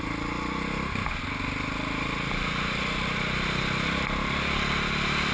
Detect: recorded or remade recorded